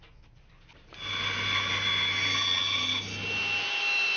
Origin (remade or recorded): recorded